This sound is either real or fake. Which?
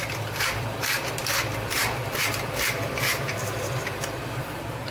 fake